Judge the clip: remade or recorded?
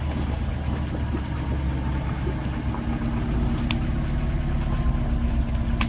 recorded